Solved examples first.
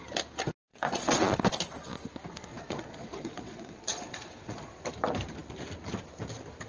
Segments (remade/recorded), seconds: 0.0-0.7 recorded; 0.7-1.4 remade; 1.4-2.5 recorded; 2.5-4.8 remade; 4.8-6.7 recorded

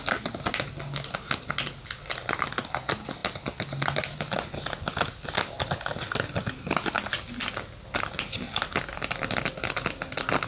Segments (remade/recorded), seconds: 0.0-10.5 recorded

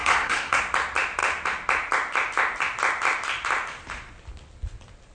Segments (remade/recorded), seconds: 0.0-0.6 remade; 0.6-5.1 recorded

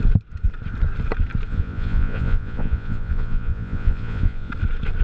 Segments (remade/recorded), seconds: 0.0-1.5 recorded; 1.5-4.5 remade; 4.5-5.0 recorded

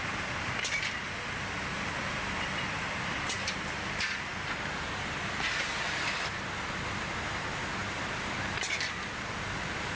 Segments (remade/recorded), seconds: 0.0-9.9 recorded

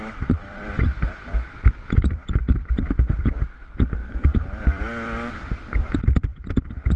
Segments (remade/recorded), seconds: 0.0-7.0 remade

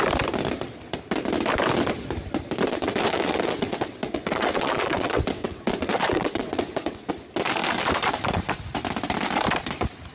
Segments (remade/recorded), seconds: 0.0-2.7 recorded; 2.7-7.1 remade; 7.1-10.1 recorded